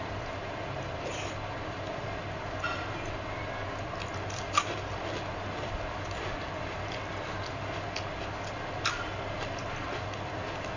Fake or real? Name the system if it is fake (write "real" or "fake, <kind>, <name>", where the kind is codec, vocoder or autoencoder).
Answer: real